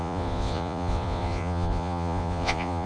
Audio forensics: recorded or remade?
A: remade